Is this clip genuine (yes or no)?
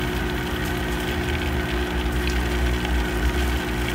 yes